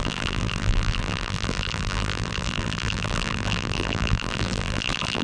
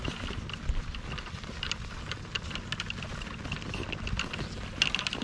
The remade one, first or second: first